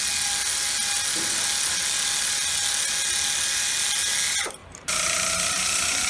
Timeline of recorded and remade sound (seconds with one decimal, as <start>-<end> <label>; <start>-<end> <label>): 0.0-4.6 recorded; 4.6-6.1 remade